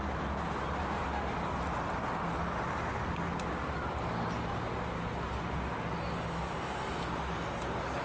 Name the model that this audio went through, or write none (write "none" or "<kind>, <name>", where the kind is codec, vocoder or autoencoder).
none